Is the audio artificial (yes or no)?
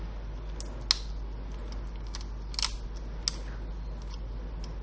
no